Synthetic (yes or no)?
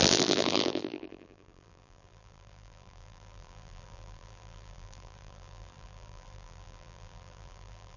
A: yes